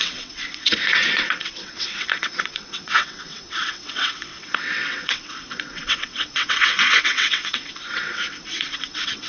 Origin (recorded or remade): remade